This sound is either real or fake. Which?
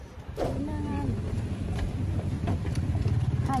fake